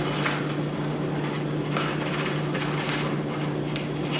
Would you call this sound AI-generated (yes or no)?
no